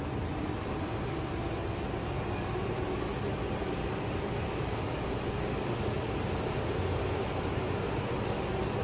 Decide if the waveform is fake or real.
real